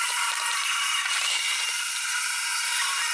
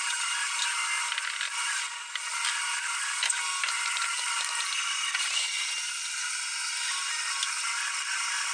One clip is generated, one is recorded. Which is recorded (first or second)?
second